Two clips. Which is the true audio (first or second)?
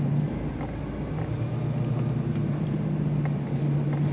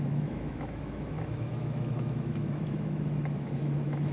first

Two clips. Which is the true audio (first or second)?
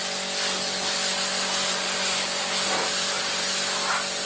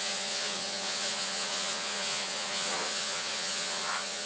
first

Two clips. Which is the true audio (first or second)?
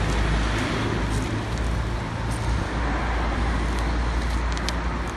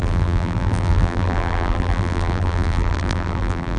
first